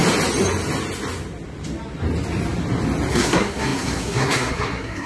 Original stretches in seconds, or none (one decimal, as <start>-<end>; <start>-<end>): 0.0-3.1